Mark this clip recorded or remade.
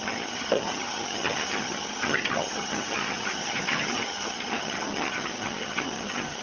remade